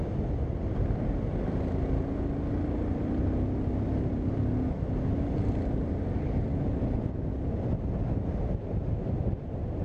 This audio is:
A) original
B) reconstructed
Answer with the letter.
A